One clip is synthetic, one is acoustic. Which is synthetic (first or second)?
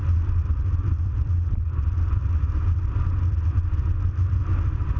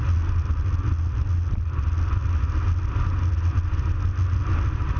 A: first